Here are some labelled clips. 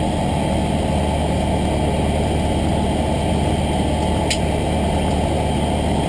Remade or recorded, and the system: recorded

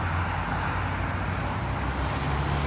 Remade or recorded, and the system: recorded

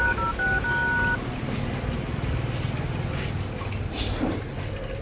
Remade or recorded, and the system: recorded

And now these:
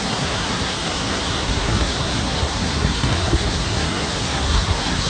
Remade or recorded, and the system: remade, codec, SNAC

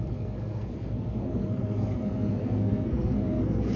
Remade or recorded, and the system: remade, codec, SNAC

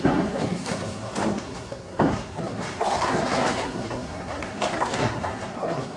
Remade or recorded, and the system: remade, codec, SNAC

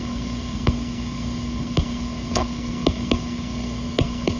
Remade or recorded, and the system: remade, codec, SNAC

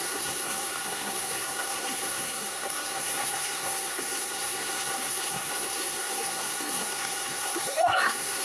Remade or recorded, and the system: remade, codec, SNAC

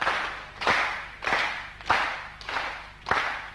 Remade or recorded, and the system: recorded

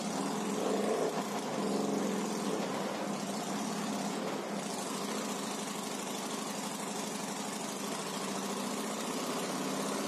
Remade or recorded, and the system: recorded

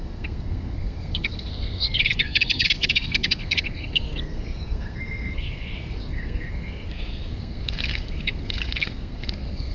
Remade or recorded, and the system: remade, codec, SNAC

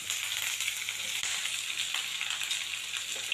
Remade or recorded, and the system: recorded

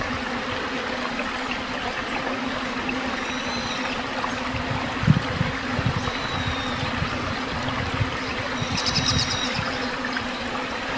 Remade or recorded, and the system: recorded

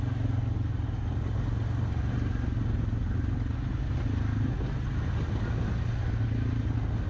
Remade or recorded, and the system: recorded